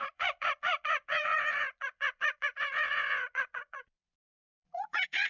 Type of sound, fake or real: fake